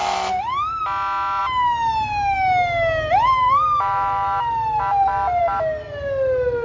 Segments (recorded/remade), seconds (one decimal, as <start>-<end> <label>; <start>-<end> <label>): 0.0-6.6 recorded